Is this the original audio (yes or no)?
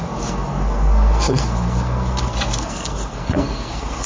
no